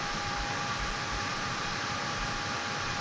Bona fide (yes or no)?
yes